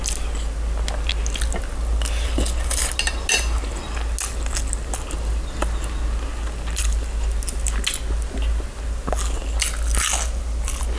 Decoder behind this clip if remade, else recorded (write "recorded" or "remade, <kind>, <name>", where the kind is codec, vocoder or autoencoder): recorded